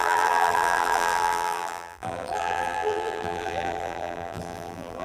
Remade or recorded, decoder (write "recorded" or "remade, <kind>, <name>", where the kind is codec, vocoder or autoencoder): remade, vocoder, BigVGAN v2